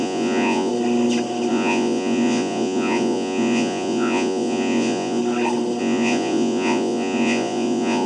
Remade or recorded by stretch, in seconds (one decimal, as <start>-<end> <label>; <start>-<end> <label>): 0.0-0.7 remade; 0.7-1.5 recorded; 1.5-5.2 remade; 5.2-5.8 recorded; 5.8-8.1 remade